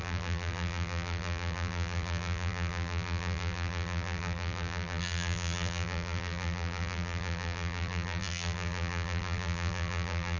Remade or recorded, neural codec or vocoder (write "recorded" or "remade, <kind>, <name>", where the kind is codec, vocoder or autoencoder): remade, vocoder, BigVGAN v2